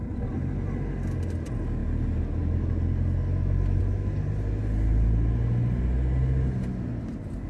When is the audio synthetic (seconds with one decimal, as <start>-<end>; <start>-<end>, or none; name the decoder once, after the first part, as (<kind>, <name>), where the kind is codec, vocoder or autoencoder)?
none